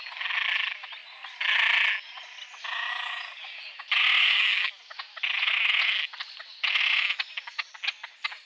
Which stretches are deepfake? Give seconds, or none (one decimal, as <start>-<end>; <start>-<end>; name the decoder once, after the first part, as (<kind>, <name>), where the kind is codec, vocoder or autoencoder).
2.9-3.6 (codec, DAC); 4.2-4.7